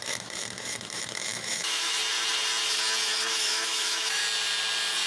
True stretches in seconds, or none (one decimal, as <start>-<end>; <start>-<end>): 2.0-3.3; 4.2-5.1